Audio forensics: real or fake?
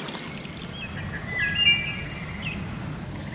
real